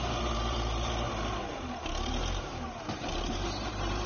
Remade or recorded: remade